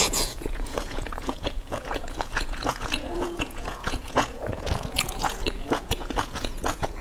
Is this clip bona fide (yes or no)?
no